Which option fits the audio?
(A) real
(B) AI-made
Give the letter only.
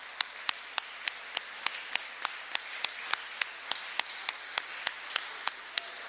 A